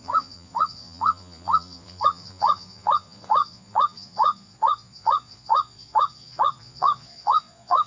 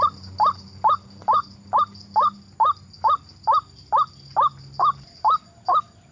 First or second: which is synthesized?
first